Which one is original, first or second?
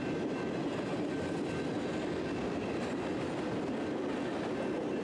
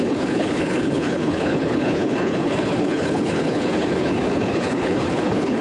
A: first